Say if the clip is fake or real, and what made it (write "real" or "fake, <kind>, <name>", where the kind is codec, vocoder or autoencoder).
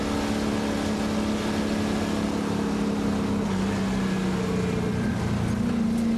real